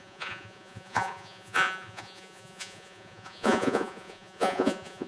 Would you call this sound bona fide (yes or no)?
no